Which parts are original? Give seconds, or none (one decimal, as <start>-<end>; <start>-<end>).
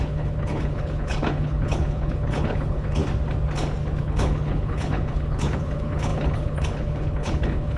3.0-4.0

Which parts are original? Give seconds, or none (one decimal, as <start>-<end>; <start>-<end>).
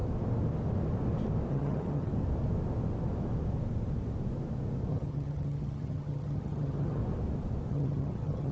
0.0-1.5; 2.1-4.9; 7.0-7.7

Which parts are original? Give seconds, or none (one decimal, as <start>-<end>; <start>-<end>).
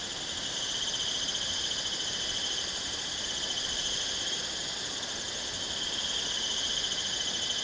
4.6-7.6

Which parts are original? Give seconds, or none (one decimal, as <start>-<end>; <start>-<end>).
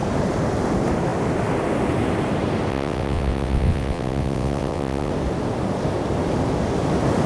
0.0-2.7; 5.1-7.3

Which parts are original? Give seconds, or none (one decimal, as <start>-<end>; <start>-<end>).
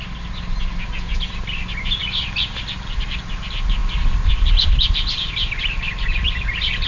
0.0-6.9